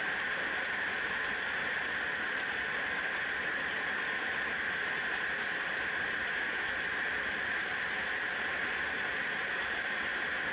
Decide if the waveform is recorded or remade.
recorded